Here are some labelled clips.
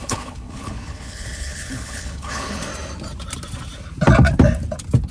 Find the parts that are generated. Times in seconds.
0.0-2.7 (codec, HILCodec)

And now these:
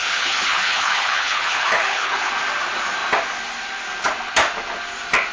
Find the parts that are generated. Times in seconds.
0.0-2.3 (codec, HILCodec)

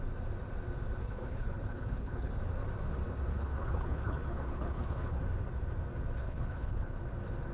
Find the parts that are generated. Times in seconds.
1.0-2.3 (codec, HILCodec); 3.3-5.2; 6.2-6.9